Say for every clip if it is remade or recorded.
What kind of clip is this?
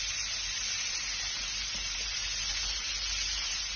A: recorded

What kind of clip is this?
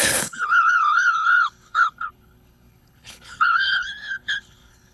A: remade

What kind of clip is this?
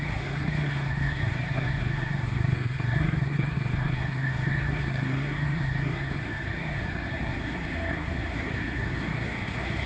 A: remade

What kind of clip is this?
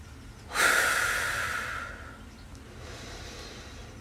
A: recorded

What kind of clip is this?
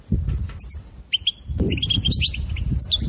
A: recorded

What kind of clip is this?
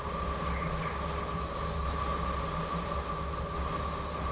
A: recorded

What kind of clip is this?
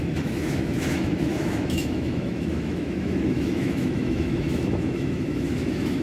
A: remade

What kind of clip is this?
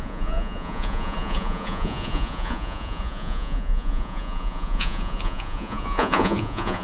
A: remade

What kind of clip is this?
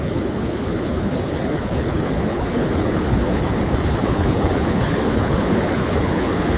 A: remade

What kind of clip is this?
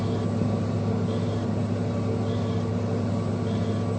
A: recorded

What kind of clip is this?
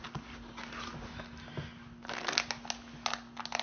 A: recorded